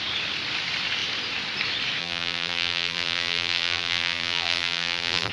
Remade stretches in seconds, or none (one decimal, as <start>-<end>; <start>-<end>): 2.0-5.3